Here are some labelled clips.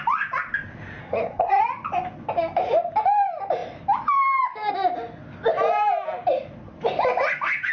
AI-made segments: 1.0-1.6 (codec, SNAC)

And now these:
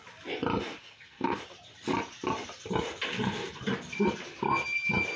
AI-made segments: 0.8-1.4 (codec, SNAC); 3.1-3.6

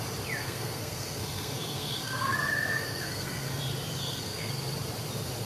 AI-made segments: 0.4-3.6 (codec, SNAC); 4.0-4.5

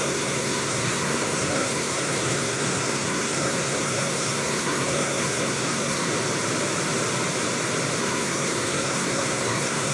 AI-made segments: 0.0-6.1 (codec, SNAC); 8.0-9.9

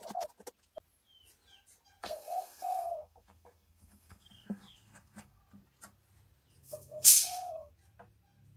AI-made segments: 2.0-5.4 (codec, SNAC); 6.6-7.7

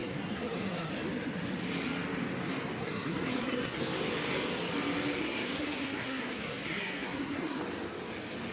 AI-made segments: 0.0-0.9 (codec, SNAC); 2.8-3.8; 5.2-7.6

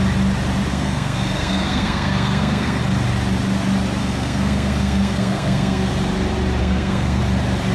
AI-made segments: 0.7-2.8 (codec, SNAC); 4.0-5.9; 6.6-7.2

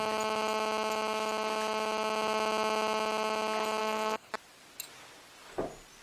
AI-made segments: 3.8-4.3 (codec, SNAC)